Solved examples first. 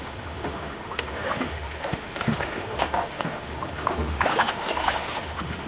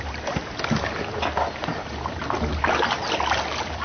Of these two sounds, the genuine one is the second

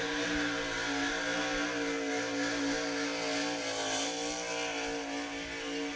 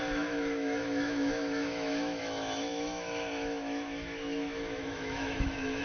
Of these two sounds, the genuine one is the first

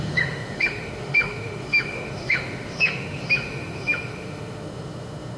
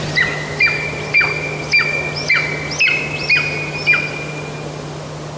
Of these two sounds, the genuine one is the second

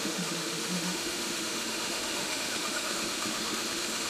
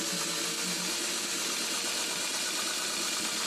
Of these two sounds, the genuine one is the second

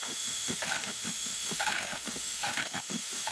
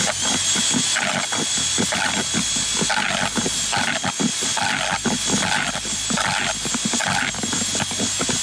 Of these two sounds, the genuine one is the second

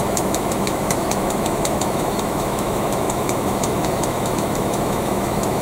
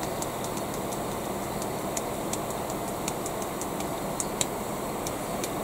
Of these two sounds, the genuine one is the second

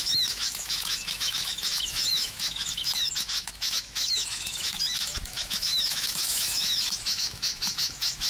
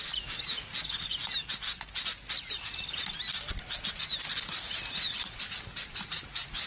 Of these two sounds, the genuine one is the second